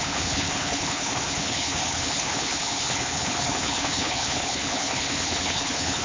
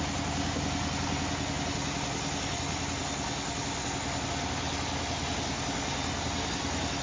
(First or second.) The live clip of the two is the second